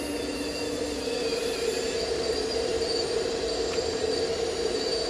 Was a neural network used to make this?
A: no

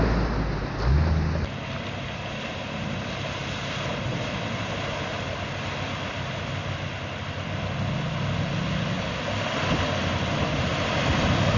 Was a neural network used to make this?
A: no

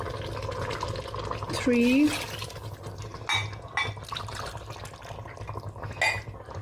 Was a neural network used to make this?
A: no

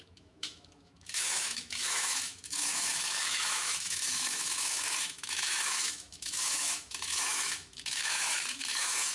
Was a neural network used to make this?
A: yes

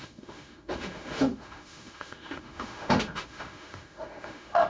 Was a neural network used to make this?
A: yes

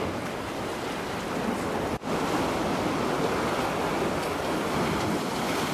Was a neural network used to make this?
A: no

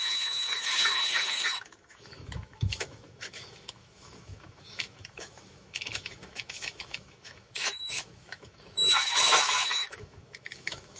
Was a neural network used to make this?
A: yes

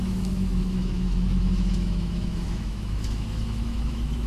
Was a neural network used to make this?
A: yes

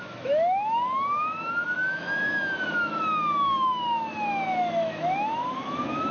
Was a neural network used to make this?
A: yes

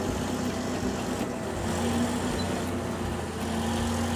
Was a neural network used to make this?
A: no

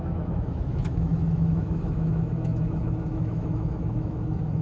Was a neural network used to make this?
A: yes